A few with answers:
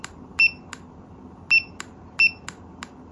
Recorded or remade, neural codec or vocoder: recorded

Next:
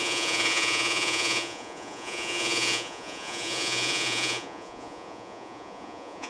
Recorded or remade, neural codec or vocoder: remade, vocoder, Vocos